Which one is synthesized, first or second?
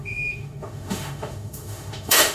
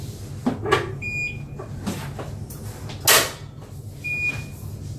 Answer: first